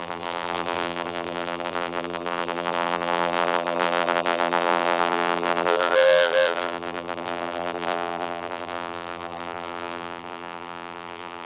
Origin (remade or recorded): remade